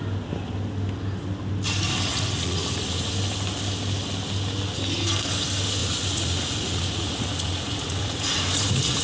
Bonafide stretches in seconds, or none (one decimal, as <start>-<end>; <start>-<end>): 0.0-2.1; 3.1-5.8